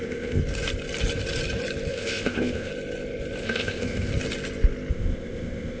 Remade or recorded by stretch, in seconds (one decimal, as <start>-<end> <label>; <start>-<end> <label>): 0.0-0.4 remade; 0.4-1.9 recorded; 1.9-2.7 remade; 2.7-3.4 recorded; 3.4-4.1 remade; 4.1-4.9 recorded; 4.9-5.8 remade